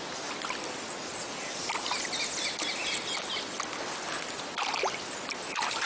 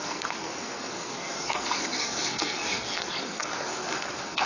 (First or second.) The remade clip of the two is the second